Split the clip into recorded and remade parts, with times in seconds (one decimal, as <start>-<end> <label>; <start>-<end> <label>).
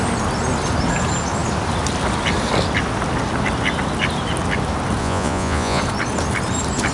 0.0-5.0 recorded; 5.0-5.8 remade; 5.8-6.9 recorded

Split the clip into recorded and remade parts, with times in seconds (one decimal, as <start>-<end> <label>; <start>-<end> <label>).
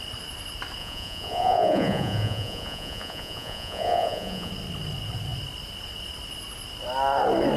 0.0-0.8 recorded; 0.8-4.5 remade; 4.5-7.6 recorded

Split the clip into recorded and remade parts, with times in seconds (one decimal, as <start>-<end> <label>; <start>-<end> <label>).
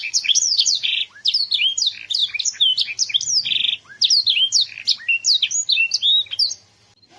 0.0-1.0 remade; 1.0-7.2 recorded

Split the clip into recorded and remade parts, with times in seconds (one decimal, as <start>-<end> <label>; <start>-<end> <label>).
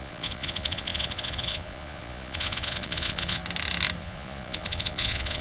0.0-3.4 remade; 3.4-4.0 recorded; 4.0-5.4 remade